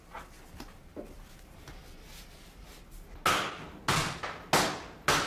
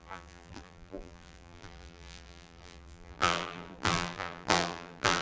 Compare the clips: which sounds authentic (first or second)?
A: first